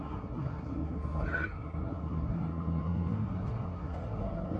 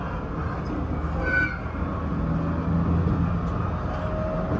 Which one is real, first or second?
second